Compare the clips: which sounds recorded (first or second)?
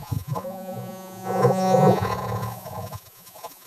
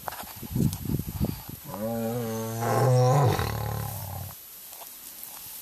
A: second